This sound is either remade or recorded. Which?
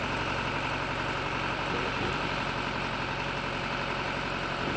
remade